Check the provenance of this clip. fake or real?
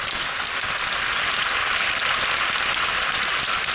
real